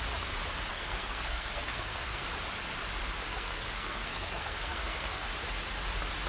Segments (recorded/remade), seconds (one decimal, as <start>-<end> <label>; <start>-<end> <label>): 0.0-0.7 recorded; 0.7-2.3 remade; 2.3-3.3 recorded; 3.3-5.3 remade; 5.3-6.3 recorded